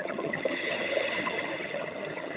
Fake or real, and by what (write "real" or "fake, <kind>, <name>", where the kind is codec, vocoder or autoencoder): fake, vocoder, HiFi-GAN